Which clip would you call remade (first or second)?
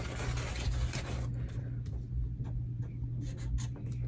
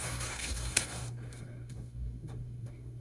second